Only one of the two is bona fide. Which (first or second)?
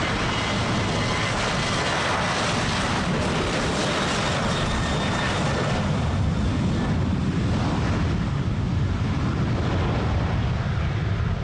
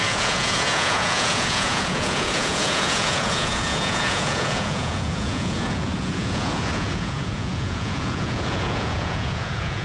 first